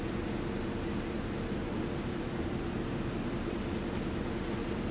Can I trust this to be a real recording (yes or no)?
yes